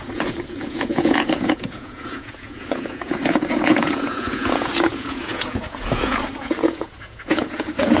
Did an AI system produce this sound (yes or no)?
yes